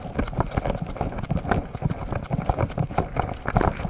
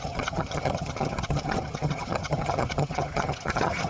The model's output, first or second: second